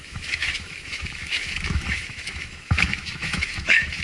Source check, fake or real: fake